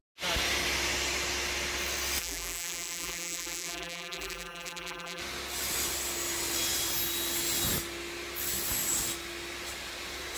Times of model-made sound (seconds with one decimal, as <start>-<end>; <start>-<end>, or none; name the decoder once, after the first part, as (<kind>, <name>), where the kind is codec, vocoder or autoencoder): 2.2-5.2 (vocoder, BigVGAN v2)